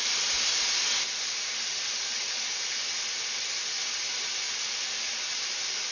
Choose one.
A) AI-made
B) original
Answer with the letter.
B